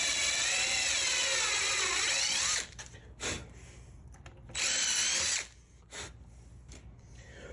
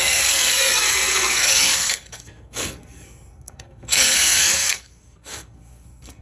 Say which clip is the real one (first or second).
first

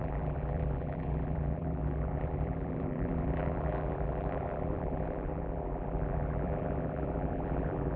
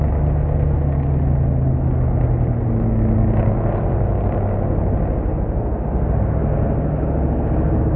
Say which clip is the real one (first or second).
second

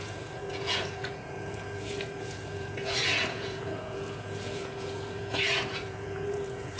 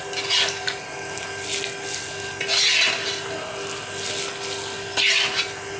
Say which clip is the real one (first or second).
second